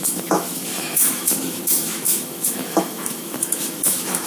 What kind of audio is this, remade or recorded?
remade